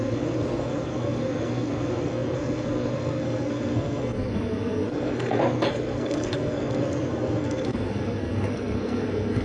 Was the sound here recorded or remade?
remade